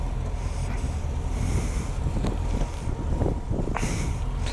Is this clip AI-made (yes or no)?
no